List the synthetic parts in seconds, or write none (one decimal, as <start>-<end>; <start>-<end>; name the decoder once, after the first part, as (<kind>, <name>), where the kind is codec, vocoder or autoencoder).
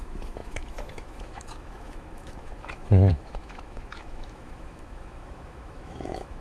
0.0-6.4 (autoencoder, DAC-VAE)